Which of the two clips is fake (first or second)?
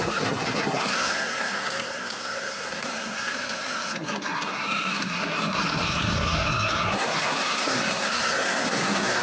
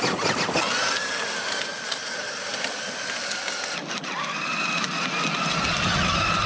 first